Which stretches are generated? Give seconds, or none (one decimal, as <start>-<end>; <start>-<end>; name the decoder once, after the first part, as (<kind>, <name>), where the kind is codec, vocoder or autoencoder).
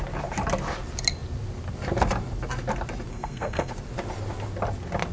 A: 3.1-3.7 (codec, SNAC)